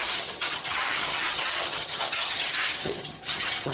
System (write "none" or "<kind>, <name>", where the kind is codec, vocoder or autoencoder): vocoder, HiFi-GAN